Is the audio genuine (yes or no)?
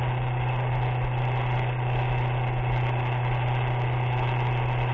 yes